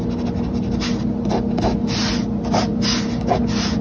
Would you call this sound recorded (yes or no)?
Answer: yes